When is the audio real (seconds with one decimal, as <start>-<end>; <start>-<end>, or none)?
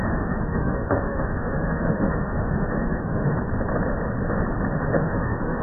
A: 3.4-4.9